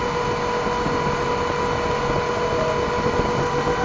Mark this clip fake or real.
real